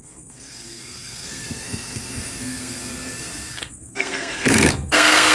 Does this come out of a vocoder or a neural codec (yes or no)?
yes